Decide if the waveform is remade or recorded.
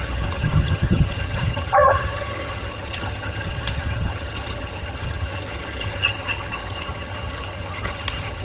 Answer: remade